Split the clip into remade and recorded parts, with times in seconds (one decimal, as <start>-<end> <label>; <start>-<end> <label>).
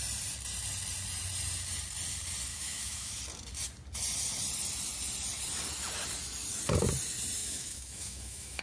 0.0-2.5 recorded; 2.5-3.2 remade; 3.2-7.4 recorded; 7.4-8.6 remade